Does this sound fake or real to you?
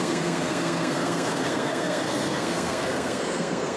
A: fake